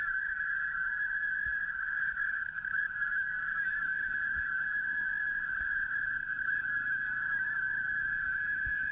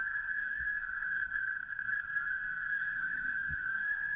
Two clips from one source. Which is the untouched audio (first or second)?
first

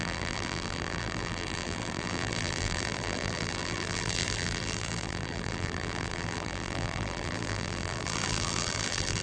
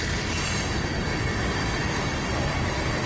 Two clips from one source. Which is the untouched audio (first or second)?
second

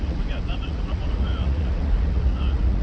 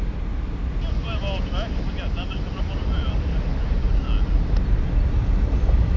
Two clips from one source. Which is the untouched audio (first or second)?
second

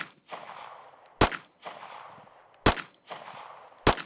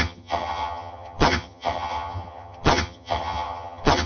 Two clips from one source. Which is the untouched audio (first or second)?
first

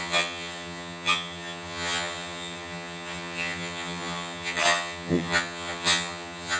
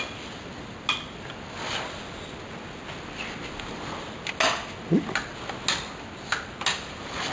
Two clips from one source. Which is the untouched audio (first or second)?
second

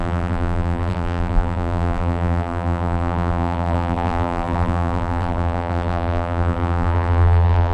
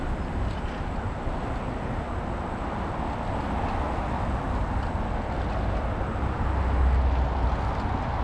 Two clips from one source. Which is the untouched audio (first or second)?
second